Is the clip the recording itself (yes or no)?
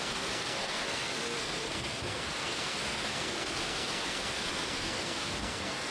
no